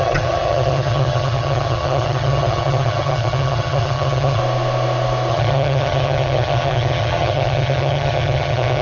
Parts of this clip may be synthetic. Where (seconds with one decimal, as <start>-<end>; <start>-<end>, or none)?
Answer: 0.0-4.4; 5.3-8.8